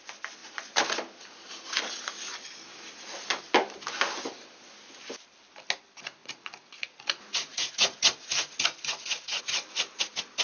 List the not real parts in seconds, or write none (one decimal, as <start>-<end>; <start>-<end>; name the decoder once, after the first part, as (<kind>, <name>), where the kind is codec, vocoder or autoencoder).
6.2-9.4 (vocoder, Vocos)